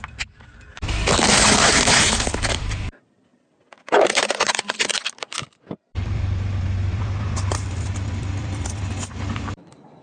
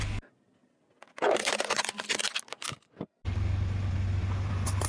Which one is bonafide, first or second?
second